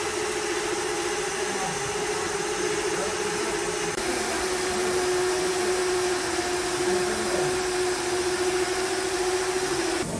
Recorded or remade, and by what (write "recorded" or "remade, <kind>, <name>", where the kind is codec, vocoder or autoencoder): recorded